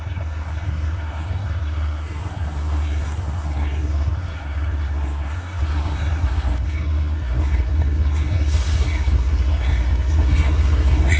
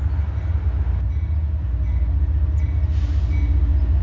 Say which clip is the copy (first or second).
first